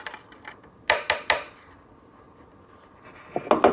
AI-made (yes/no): no